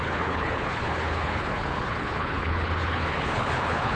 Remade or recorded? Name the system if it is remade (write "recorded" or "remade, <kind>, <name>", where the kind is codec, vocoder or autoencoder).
remade, codec, HILCodec